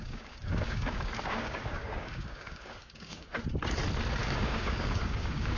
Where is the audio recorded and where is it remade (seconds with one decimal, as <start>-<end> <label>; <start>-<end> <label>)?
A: 0.0-3.4 remade; 3.4-4.2 recorded; 4.2-5.6 remade